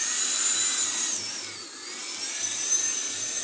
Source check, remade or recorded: recorded